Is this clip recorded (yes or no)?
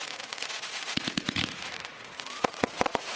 no